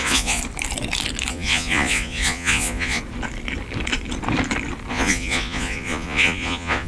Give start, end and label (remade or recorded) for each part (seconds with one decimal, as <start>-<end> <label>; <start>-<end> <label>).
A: 0.0-0.4 remade; 0.4-1.3 recorded; 1.3-3.0 remade; 3.0-4.9 recorded; 4.9-6.9 remade